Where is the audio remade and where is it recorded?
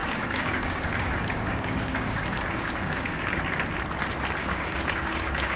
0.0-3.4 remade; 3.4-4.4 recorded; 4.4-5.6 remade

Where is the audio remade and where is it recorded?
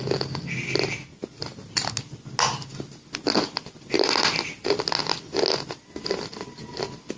0.0-7.2 recorded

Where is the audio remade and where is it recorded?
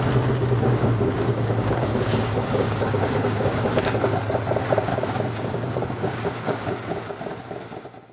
0.0-0.4 recorded; 0.4-4.0 remade; 4.0-4.9 recorded; 4.9-7.1 remade; 7.1-8.1 recorded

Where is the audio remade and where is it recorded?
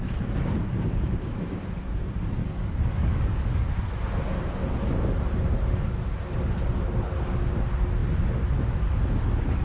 0.0-2.4 recorded; 2.4-3.7 remade; 3.7-9.6 recorded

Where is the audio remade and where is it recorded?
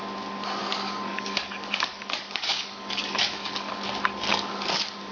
0.0-0.6 recorded; 0.6-3.7 remade; 3.7-4.3 recorded; 4.3-5.1 remade